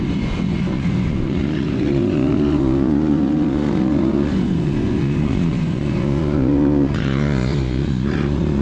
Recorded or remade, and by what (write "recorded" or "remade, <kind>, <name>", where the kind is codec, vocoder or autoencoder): remade, vocoder, Vocos